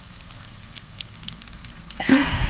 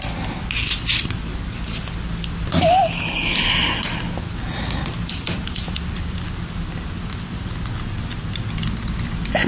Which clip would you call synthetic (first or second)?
first